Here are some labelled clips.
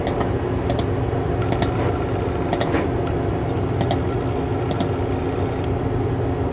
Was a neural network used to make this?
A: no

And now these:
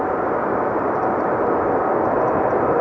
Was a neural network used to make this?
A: no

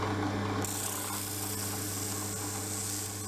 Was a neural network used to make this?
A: no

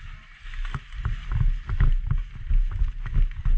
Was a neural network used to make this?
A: no